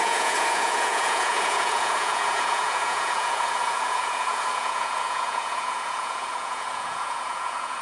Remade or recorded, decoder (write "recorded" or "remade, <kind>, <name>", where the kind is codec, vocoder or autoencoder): remade, vocoder, Vocos